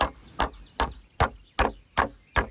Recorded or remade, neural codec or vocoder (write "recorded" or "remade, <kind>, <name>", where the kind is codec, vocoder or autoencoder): recorded